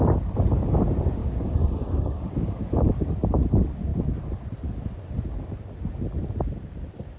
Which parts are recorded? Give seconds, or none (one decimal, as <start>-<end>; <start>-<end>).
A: 0.0-1.2; 2.9-7.2